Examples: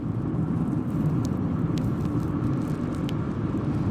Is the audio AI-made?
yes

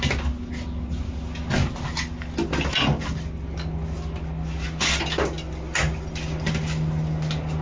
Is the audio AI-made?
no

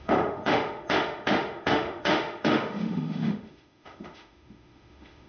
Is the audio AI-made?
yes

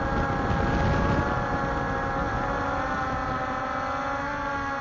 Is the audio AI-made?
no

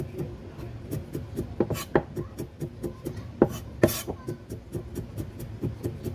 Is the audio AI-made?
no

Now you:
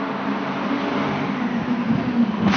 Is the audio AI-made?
no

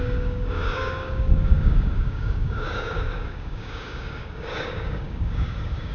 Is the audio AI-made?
yes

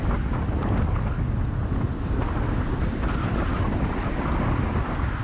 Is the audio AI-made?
no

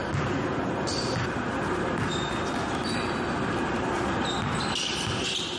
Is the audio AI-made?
no